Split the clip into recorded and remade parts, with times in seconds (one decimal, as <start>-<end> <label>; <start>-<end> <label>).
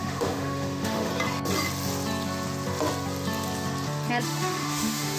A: 0.0-1.1 remade; 1.1-4.2 recorded; 4.2-5.2 remade